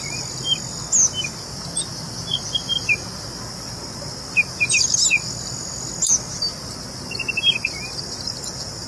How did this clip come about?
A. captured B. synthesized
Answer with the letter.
A